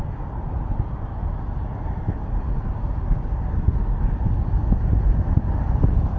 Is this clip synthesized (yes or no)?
no